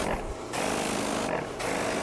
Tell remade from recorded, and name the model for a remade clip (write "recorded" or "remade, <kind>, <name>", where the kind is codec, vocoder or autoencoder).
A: recorded